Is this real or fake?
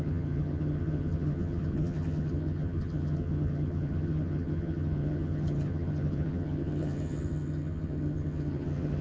fake